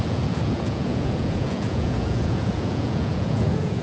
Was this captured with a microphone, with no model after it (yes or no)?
no